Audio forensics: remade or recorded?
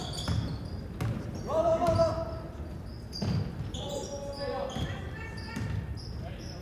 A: recorded